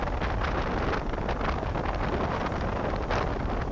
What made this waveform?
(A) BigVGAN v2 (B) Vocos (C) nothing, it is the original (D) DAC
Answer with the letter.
C